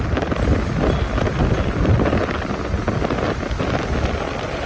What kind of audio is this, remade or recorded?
recorded